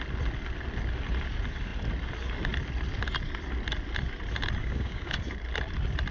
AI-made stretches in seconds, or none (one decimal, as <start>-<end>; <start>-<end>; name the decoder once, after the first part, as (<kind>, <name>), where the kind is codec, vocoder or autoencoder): 4.6-5.2 (codec, DAC)